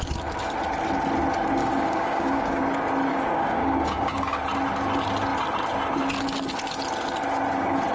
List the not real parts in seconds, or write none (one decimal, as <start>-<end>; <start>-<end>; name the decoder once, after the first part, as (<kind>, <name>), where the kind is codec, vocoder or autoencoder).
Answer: 1.6-2.6 (codec, DAC); 3.1-4.4